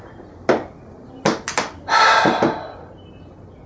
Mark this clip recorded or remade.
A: recorded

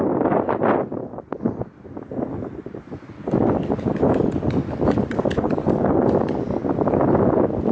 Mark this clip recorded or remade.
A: recorded